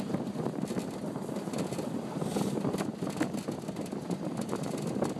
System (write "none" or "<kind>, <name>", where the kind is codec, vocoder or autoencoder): none